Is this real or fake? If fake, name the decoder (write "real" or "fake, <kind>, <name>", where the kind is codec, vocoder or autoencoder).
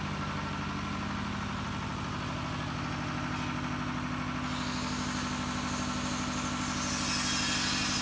real